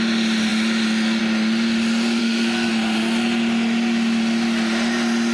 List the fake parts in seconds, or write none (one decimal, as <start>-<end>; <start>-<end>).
2.2-2.7